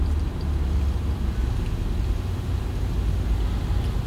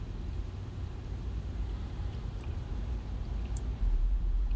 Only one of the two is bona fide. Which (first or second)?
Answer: first